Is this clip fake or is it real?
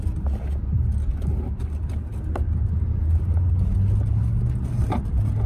real